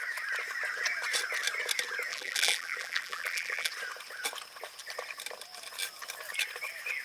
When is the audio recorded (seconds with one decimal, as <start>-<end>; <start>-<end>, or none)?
0.0-2.1; 3.7-7.0

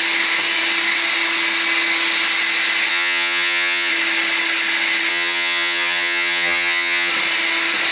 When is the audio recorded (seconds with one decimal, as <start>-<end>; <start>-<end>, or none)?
0.0-2.9; 3.9-5.1; 7.1-7.9

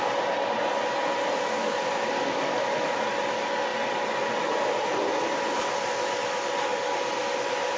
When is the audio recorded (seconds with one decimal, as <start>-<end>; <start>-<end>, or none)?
0.0-7.8